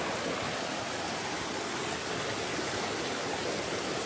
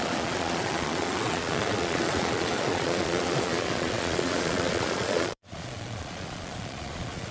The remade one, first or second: second